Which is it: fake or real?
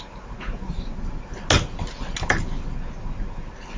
real